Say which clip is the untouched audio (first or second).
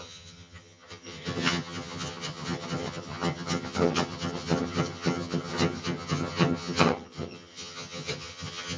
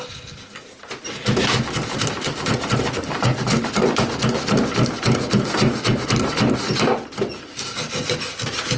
second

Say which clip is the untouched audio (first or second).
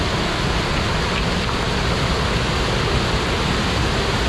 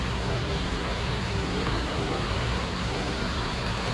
first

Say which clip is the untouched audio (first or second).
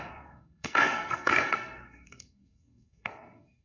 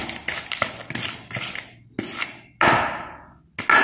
second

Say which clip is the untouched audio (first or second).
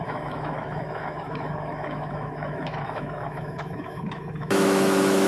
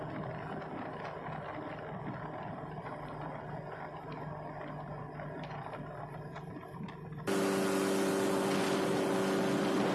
second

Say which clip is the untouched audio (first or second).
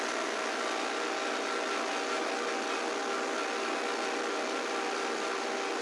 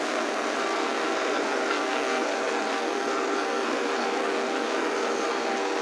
first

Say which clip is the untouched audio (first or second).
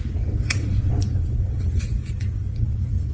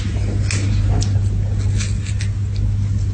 second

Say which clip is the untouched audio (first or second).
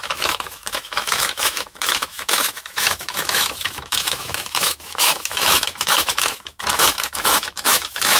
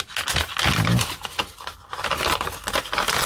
second